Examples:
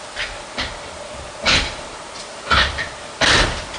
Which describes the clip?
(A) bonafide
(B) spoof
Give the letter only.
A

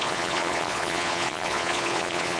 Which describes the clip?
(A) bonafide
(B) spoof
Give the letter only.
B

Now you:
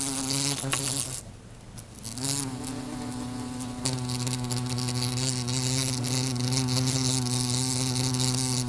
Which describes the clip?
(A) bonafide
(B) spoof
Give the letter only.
A